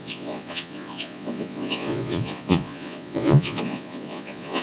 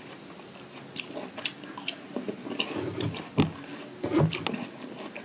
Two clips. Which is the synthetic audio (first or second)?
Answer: first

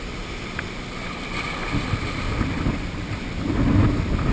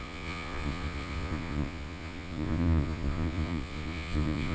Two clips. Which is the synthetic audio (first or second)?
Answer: second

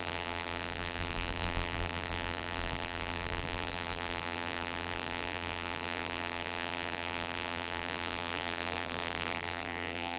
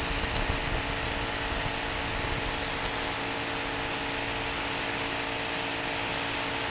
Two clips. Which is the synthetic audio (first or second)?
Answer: first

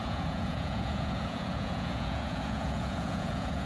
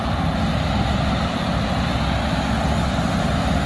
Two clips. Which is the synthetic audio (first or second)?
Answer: first